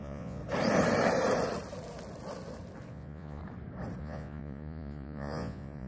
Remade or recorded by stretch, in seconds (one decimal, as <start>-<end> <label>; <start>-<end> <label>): 0.0-0.4 remade; 0.4-2.9 recorded; 2.9-3.4 remade; 3.4-4.0 recorded; 4.0-5.9 remade